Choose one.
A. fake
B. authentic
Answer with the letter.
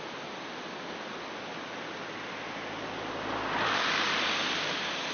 B